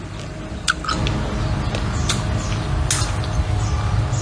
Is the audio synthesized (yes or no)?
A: no